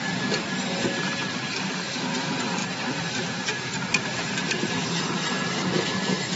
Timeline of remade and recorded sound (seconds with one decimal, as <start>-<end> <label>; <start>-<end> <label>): 0.0-6.4 recorded

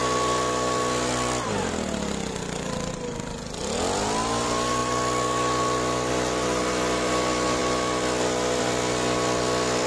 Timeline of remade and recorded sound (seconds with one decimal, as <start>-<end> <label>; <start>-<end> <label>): 0.0-9.9 recorded